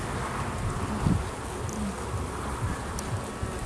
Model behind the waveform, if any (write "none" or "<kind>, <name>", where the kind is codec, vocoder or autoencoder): none